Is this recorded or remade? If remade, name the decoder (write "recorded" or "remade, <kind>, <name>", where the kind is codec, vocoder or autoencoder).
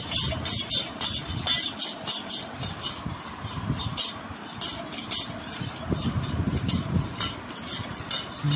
recorded